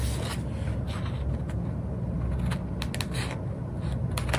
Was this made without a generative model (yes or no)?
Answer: yes